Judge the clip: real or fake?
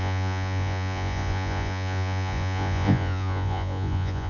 fake